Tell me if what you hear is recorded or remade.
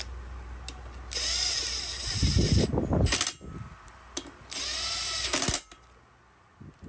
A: recorded